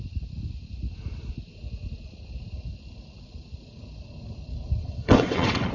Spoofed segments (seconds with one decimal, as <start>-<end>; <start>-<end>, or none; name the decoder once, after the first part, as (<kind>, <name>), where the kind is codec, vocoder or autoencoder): 4.8-5.7 (vocoder, WaveNeXt)